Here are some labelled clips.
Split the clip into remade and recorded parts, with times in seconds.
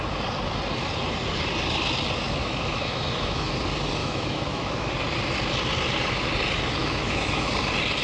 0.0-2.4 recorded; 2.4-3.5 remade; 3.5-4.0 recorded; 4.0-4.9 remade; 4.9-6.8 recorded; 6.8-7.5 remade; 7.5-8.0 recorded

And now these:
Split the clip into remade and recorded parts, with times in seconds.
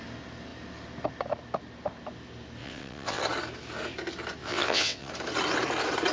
0.0-2.6 recorded; 2.6-3.2 remade; 3.2-4.4 recorded; 4.4-5.1 remade; 5.1-6.1 recorded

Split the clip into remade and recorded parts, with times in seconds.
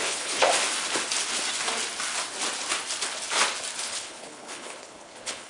0.0-0.5 remade; 0.5-3.8 recorded; 3.8-5.5 remade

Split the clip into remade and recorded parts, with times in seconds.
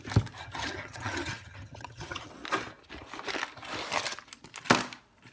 0.0-0.4 recorded; 0.4-2.3 remade; 2.3-5.3 recorded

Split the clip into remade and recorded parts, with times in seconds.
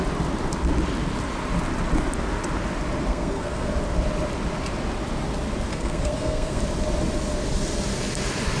0.0-3.1 recorded; 3.1-3.7 remade; 3.7-5.7 recorded; 5.7-6.6 remade; 6.6-8.6 recorded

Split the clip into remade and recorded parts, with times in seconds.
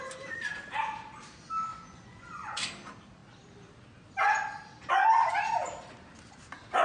0.0-1.7 recorded; 1.7-2.6 remade; 2.6-6.8 recorded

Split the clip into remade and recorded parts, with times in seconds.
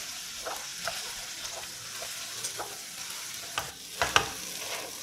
0.0-5.0 recorded